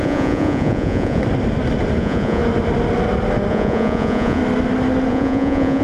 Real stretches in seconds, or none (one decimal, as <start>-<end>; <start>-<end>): 1.2-2.0; 2.4-3.5; 4.4-5.1